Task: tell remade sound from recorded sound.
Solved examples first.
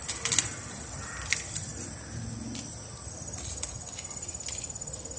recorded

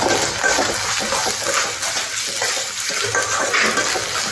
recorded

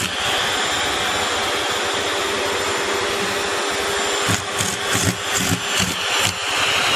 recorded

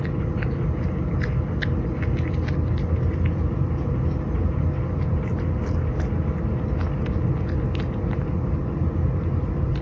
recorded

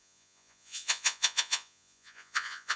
remade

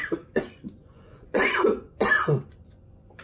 remade